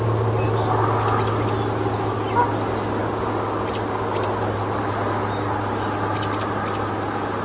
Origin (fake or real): real